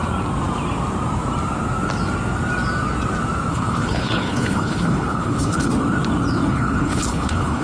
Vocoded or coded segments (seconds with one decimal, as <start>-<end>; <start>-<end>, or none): 3.5-5.7; 6.5-7.6